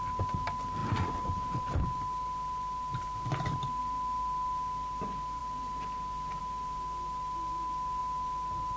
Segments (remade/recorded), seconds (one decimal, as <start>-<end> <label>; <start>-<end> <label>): 0.0-8.8 recorded